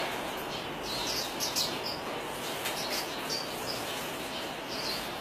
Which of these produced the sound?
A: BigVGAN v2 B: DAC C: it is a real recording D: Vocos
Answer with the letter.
C